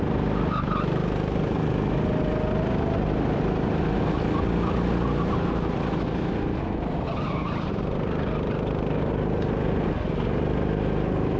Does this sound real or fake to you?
real